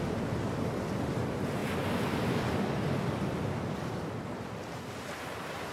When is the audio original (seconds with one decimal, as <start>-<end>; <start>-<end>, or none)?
0.0-1.6; 4.1-5.7